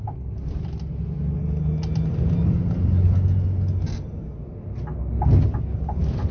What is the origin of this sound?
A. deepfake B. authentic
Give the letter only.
B